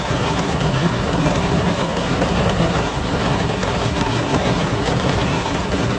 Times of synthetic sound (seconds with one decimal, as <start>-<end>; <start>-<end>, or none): 0.0-6.0